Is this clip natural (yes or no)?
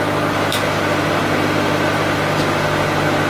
yes